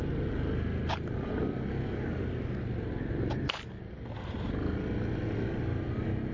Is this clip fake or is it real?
real